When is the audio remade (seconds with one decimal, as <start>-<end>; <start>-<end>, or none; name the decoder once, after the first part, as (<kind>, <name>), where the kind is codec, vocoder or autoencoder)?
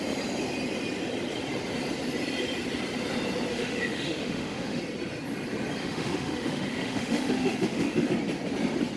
3.5-4.8 (autoencoder, DAC-VAE); 5.8-8.1